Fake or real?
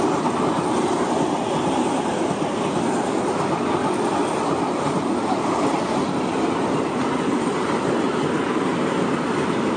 real